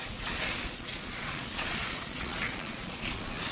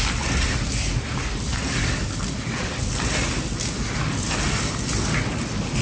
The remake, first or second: first